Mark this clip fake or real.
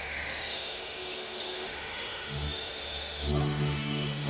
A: fake